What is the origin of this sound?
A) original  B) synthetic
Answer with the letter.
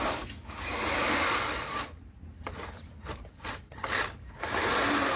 A